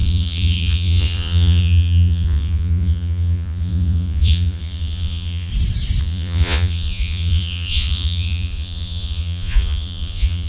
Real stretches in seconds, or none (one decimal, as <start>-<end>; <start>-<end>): 5.5-6.0

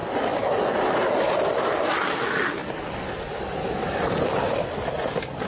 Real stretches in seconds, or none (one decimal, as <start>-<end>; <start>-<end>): 0.0-5.5

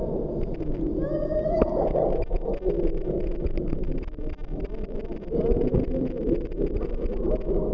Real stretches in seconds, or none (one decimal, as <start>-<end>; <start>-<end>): 0.0-1.3; 2.3-2.8; 3.8-7.7

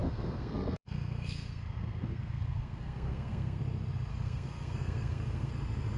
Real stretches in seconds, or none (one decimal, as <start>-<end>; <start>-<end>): 3.6-4.1; 5.5-6.0